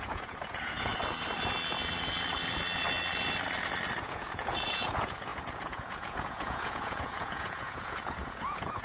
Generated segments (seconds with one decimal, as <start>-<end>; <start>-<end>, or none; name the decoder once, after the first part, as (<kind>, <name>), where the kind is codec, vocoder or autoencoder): 0.0-0.9 (vocoder, Vocos); 4.0-8.8